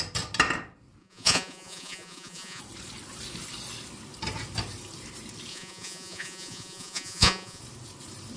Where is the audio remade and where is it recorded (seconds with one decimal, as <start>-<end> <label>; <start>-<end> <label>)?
0.0-1.0 recorded; 1.0-2.6 remade; 2.6-5.5 recorded; 5.5-7.6 remade; 7.6-8.4 recorded